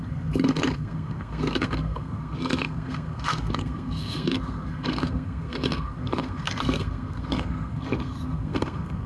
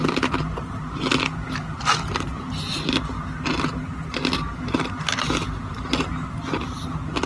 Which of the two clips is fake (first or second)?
first